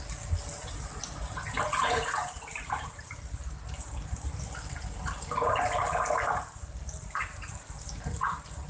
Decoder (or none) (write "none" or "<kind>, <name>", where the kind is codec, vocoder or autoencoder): none